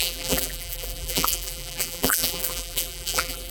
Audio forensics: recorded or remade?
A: remade